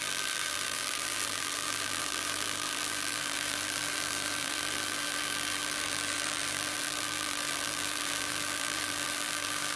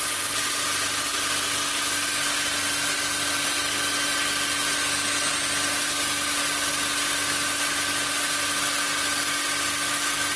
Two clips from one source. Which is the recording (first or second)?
second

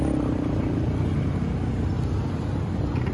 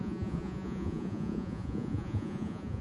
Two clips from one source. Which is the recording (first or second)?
first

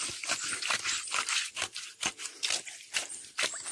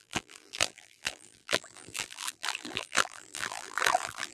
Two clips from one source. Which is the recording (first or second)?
first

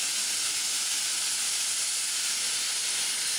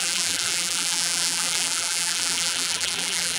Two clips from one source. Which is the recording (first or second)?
first